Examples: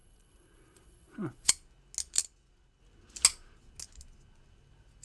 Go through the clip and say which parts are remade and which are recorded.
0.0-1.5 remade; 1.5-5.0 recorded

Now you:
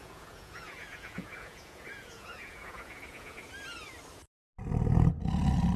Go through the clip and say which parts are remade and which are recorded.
0.0-3.5 remade; 3.5-5.8 recorded

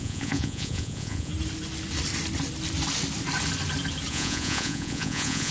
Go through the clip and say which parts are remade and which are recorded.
0.0-1.3 remade; 1.3-4.1 recorded; 4.1-5.5 remade

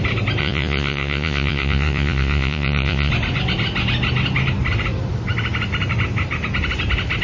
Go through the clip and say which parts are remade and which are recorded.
0.0-0.4 recorded; 0.4-3.1 remade; 3.1-7.2 recorded

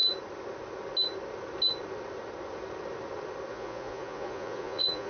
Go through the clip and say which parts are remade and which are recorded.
0.0-3.5 recorded; 3.5-5.1 remade

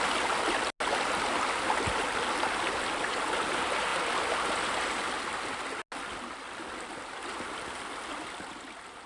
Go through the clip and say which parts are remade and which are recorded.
0.0-9.1 recorded

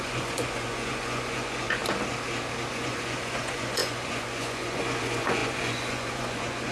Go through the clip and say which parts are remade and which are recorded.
0.0-1.8 remade; 1.8-2.7 recorded; 2.7-6.7 remade